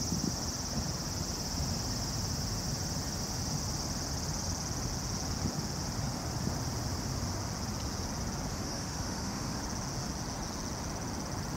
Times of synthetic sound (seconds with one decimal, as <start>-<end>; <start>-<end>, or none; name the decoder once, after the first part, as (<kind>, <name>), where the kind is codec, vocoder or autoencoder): 8.5-9.6 (autoencoder, DAC-VAE)